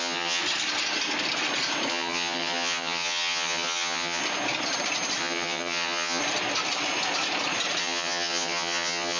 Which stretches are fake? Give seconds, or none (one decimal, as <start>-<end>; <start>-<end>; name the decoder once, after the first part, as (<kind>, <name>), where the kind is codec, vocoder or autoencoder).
0.0-0.4 (vocoder, HiFi-GAN); 1.9-4.2; 5.2-6.2; 7.8-9.2